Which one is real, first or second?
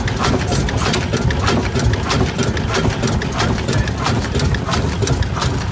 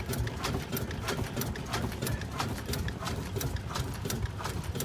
first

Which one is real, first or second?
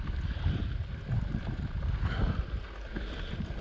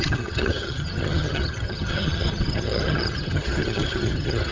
first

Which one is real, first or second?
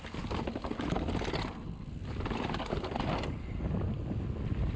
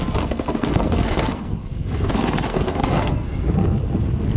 first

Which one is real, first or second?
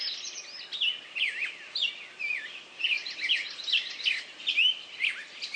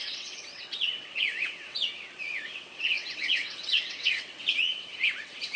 first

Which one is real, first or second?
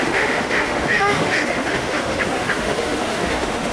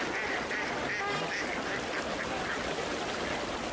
second